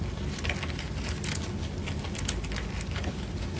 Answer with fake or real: real